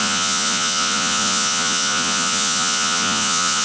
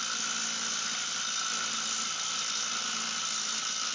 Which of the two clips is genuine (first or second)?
second